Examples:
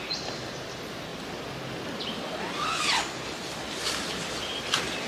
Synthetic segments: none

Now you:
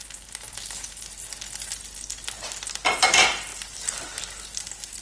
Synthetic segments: 3.5-4.2

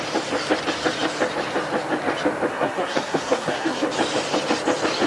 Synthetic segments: 2.5-3.9

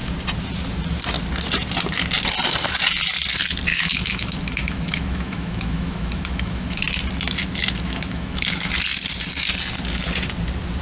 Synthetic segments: 3.7-6.8; 7.4-8.7

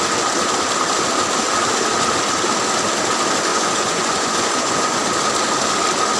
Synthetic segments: 3.5-5.0

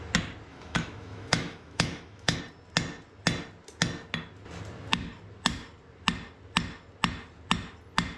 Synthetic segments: 0.5-2.4